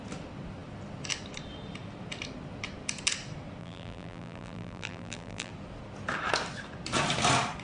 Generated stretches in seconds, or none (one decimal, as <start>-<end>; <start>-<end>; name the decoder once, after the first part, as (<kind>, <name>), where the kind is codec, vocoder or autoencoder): 3.6-5.5 (vocoder, BigVGAN v2)

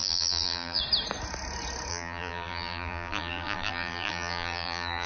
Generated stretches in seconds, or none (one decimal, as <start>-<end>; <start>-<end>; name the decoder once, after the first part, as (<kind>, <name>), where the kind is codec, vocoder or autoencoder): 0.0-0.8 (vocoder, BigVGAN v2); 1.9-5.1

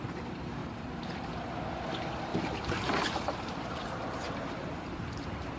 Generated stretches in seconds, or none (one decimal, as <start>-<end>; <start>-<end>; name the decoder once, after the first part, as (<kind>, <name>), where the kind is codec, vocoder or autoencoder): 0.6-1.3 (vocoder, BigVGAN v2); 2.3-5.6